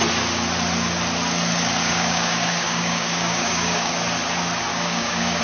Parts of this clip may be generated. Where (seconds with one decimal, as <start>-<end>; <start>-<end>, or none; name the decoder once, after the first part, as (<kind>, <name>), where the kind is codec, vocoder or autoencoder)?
1.8-3.9 (codec, DAC); 4.7-5.4